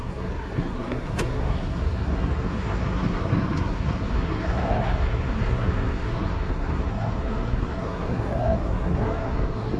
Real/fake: fake